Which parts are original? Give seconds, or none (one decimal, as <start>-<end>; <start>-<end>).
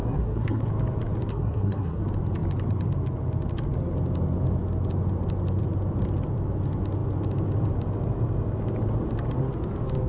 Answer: 0.6-1.3; 2.0-10.1